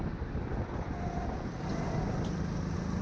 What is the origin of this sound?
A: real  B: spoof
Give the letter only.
A